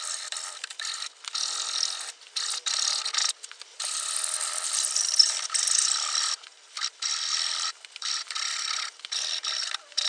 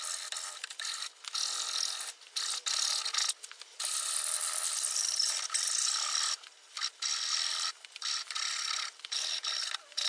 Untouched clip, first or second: second